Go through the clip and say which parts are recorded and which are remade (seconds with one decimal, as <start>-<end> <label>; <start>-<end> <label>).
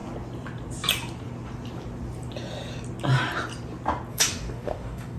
0.0-4.1 recorded; 4.1-5.2 remade